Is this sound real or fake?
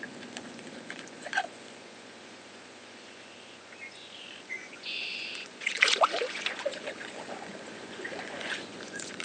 fake